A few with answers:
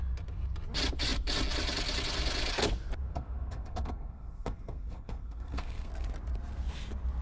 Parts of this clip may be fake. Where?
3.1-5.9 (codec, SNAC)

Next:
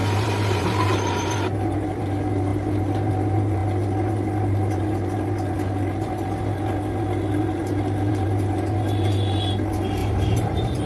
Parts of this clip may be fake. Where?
0.0-1.3 (vocoder, BigVGAN v2); 10.0-10.9

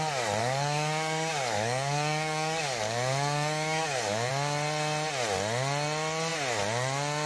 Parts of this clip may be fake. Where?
0.4-4.3 (codec, DAC)